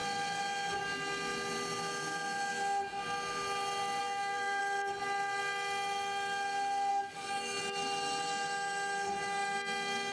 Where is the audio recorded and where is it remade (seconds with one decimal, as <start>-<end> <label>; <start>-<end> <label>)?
0.0-4.0 recorded; 4.0-4.6 remade; 4.6-6.9 recorded; 6.9-7.6 remade; 7.6-10.1 recorded